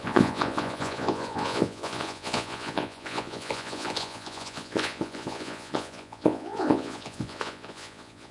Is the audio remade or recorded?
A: remade